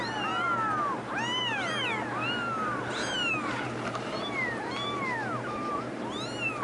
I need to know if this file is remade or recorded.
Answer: recorded